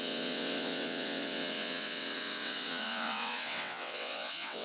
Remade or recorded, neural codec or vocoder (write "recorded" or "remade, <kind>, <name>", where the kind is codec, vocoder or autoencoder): remade, vocoder, WaveNeXt